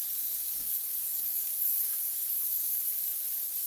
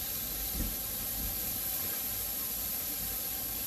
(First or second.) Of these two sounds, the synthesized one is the first